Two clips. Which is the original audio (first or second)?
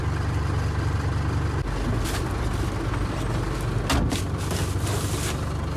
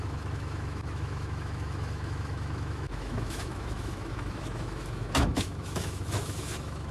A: first